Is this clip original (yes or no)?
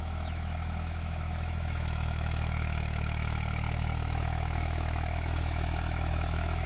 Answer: no